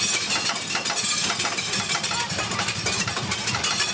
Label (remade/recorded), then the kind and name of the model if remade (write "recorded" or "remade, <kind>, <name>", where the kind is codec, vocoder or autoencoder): recorded